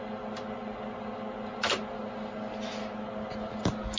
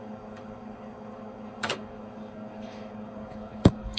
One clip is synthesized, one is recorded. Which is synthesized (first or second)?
second